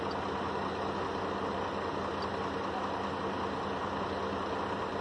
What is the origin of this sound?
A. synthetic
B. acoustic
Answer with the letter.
B